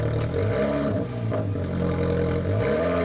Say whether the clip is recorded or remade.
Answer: recorded